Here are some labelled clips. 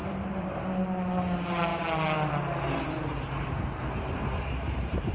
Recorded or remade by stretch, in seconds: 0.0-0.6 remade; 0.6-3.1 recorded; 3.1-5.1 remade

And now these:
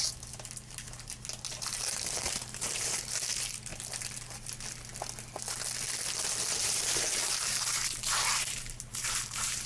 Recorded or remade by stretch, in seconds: 0.0-3.7 remade; 3.7-6.6 recorded; 6.6-9.7 remade

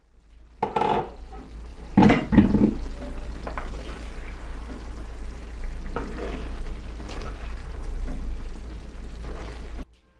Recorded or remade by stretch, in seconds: 0.0-1.7 recorded; 1.7-2.3 remade; 2.3-7.6 recorded; 7.6-8.5 remade; 8.5-10.2 recorded